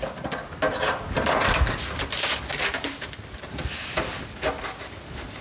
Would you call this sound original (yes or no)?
yes